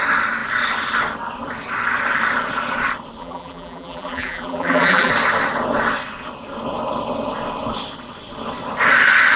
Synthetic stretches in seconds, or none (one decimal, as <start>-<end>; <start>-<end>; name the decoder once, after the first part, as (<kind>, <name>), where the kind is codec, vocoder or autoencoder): 3.2-5.1 (vocoder, BigVGAN v2)